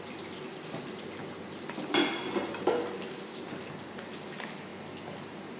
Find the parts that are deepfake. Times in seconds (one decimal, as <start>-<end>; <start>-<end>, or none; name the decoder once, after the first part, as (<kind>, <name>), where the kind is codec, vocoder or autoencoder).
none